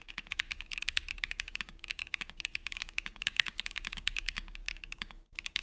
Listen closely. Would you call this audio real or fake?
fake